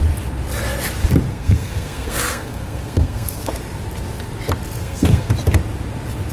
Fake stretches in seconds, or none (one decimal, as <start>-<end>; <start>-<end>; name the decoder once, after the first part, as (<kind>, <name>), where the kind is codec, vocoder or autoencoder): 1.3-3.5 (codec, SNAC); 4.8-5.3